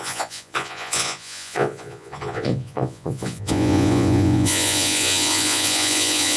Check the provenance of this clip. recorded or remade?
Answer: remade